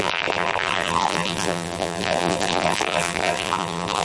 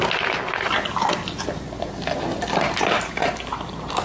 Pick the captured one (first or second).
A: second